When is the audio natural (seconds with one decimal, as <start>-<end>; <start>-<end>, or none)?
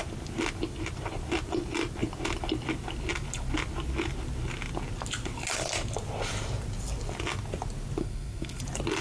0.0-8.0; 8.6-9.0